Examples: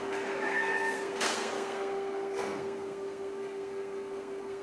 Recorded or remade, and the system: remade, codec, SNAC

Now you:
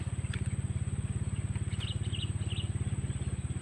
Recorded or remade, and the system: recorded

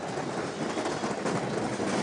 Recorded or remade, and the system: recorded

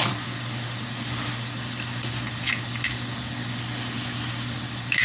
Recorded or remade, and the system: recorded